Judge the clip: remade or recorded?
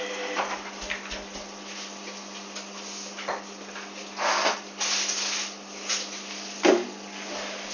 recorded